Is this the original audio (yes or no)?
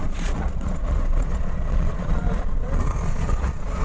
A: no